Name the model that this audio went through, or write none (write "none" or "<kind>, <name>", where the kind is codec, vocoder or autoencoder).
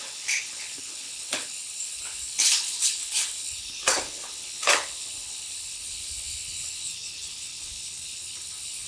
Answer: codec, HILCodec